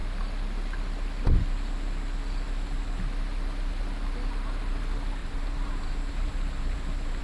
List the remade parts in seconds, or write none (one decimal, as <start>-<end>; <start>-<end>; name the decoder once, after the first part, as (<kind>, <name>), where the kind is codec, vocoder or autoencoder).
5.2-7.2 (vocoder, BigVGAN v2)